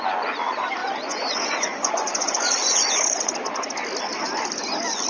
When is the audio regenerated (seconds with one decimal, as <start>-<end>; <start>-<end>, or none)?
0.8-3.3